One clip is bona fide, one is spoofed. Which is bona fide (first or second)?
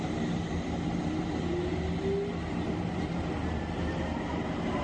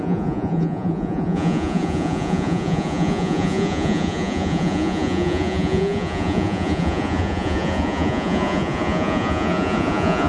first